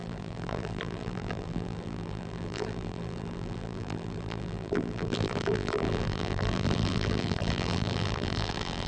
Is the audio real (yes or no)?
no